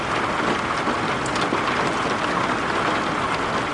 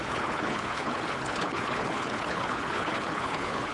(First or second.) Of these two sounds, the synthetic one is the second